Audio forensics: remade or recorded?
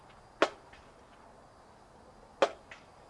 recorded